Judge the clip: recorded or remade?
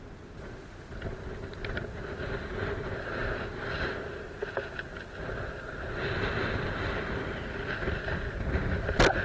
recorded